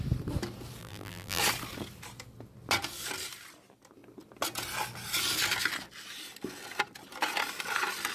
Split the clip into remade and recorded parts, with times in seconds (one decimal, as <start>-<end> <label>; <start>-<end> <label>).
0.0-0.8 recorded; 0.8-1.4 remade; 1.4-8.1 recorded